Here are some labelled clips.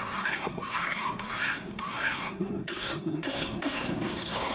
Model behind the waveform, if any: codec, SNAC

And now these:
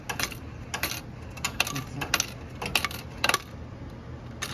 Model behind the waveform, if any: none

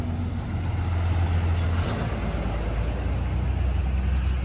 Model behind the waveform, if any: none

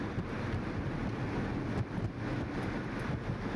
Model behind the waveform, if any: none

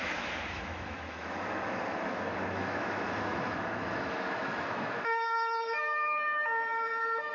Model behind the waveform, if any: autoencoder, DAC-VAE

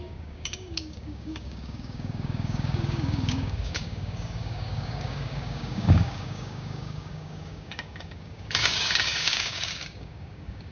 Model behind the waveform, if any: codec, DAC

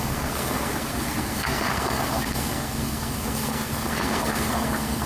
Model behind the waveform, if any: codec, SNAC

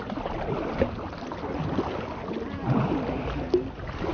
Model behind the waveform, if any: none